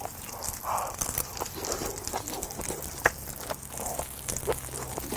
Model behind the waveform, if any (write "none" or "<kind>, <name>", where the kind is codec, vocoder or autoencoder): none